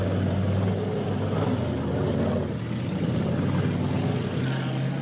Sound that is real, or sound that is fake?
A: real